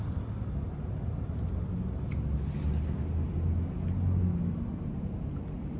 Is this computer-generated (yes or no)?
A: no